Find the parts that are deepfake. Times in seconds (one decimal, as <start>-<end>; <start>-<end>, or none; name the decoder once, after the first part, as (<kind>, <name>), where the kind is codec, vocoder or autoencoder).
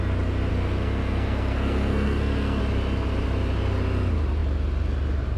0.5-2.6 (codec, SNAC)